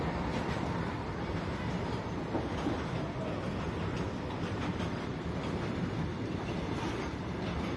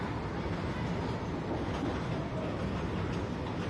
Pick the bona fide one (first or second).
second